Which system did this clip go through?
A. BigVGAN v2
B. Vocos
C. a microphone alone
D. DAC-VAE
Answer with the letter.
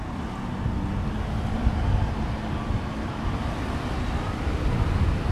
C